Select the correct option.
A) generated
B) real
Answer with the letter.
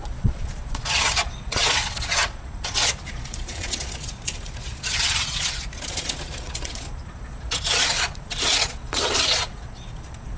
A